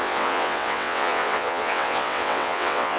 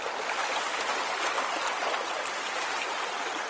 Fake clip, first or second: first